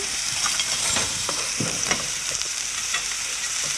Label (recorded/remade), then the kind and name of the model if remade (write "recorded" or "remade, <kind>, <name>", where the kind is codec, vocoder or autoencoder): remade, vocoder, BigVGAN v2